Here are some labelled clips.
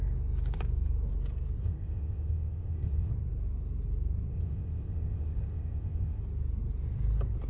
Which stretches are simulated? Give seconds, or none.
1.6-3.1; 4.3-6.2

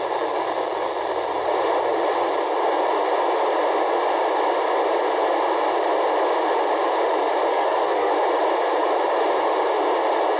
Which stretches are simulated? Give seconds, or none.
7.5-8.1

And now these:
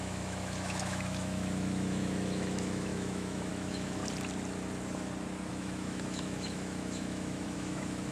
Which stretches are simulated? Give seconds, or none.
0.0-4.0; 5.5-8.1

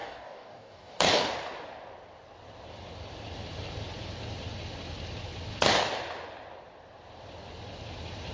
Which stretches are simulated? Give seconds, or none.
0.0-1.3

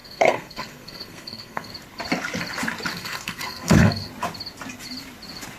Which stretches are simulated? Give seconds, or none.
0.0-1.7; 2.9-4.1